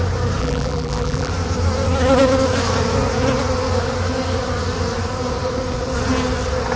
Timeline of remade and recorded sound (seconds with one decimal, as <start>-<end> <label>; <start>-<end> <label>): 0.0-0.4 recorded; 0.4-1.3 remade; 1.3-6.8 recorded